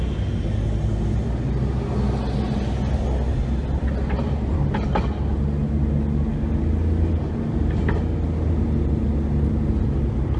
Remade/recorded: recorded